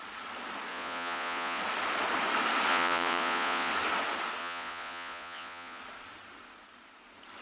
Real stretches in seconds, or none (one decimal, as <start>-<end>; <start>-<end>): 0.0-0.7; 1.6-2.7; 3.7-4.4; 5.8-7.4